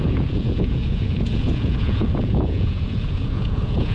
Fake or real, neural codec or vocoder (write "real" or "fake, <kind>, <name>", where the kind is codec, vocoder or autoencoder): fake, vocoder, Vocos